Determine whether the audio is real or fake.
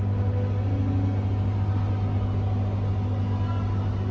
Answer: real